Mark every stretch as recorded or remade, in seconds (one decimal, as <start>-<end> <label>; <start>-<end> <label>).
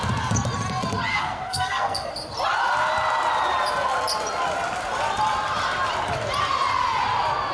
0.0-1.1 recorded; 1.1-2.1 remade; 2.1-7.5 recorded